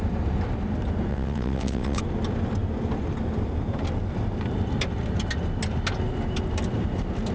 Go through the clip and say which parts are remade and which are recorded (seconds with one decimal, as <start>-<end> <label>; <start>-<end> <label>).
0.0-1.1 recorded; 1.1-2.0 remade; 2.0-7.3 recorded

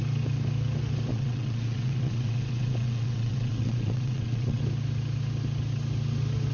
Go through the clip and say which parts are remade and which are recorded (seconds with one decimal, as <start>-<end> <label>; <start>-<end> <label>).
0.0-1.1 recorded; 1.1-4.6 remade; 4.6-6.5 recorded